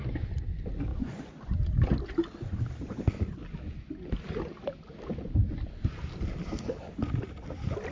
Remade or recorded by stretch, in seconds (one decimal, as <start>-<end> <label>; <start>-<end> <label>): 0.0-0.9 recorded; 0.9-1.5 remade; 1.5-7.9 recorded